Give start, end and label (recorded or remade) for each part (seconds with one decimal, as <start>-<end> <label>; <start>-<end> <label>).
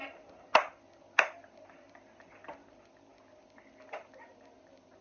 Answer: 0.0-5.0 recorded